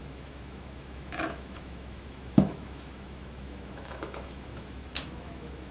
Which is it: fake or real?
fake